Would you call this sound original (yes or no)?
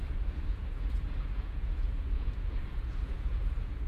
no